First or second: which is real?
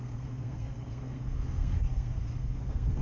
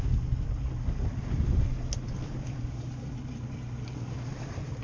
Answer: second